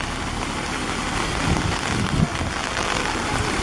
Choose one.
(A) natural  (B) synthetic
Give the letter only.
A